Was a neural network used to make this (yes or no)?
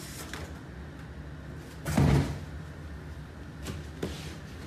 no